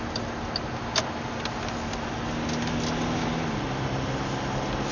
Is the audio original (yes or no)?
yes